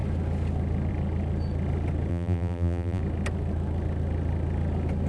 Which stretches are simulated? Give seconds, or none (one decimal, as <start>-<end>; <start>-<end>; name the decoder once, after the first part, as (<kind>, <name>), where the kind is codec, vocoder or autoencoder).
2.1-3.0 (vocoder, BigVGAN v2)